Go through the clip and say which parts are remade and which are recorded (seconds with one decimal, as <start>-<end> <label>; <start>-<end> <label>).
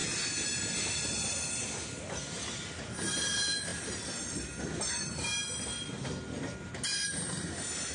0.0-7.9 recorded